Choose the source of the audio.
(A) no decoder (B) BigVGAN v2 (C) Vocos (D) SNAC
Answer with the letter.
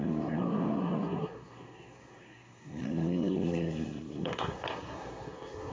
D